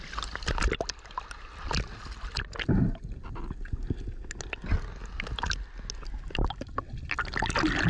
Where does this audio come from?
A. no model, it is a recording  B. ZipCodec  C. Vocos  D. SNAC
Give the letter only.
A